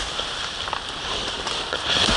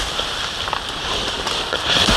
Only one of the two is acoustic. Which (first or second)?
first